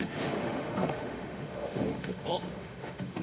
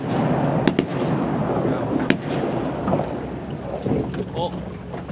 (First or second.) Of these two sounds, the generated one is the first